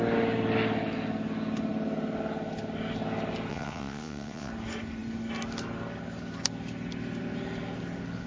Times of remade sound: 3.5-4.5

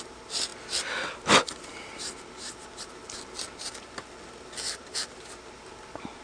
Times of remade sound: none

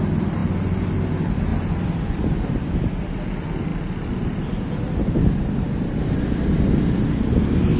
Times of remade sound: none

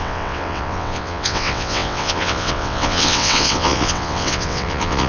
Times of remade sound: 0.0-5.1